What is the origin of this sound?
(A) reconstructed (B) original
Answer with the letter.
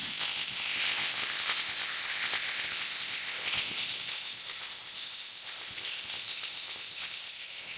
A